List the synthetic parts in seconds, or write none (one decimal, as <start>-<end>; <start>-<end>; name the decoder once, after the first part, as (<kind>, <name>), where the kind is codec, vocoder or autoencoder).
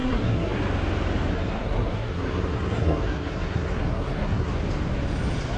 0.0-0.6 (codec, SNAC); 1.3-4.5